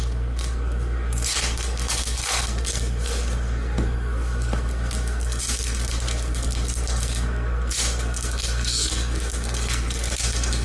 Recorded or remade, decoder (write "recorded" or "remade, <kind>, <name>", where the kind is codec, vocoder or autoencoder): remade, codec, SNAC